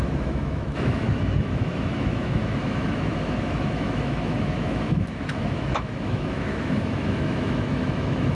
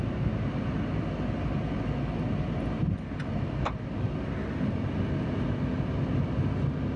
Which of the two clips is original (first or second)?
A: second